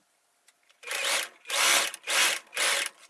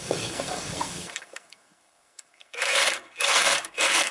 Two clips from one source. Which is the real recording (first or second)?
first